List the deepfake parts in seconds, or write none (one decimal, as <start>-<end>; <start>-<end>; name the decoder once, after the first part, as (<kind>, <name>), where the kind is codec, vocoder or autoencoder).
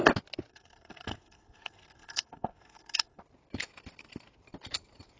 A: 0.5-3.2 (codec, SNAC)